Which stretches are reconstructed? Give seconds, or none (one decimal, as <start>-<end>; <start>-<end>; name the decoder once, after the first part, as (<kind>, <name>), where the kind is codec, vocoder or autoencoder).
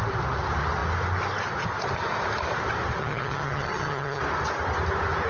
3.0-4.2 (vocoder, HiFi-GAN)